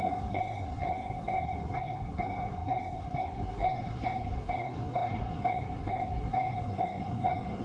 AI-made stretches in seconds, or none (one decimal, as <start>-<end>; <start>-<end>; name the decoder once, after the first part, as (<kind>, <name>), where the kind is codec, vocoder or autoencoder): 0.0-7.6 (codec, SNAC)